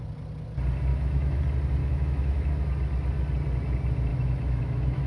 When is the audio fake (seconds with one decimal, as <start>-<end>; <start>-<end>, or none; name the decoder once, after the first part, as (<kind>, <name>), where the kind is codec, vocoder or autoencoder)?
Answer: 0.9-1.4 (autoencoder, DAC-VAE); 1.8-2.5; 4.1-5.1